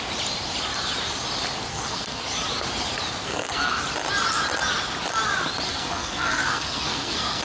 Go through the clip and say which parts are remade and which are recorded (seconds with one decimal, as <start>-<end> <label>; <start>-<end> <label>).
0.0-1.7 recorded; 1.7-2.2 remade; 2.2-3.2 recorded; 3.2-3.8 remade; 3.8-5.7 recorded; 5.7-7.4 remade